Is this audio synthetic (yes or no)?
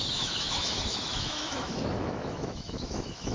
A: yes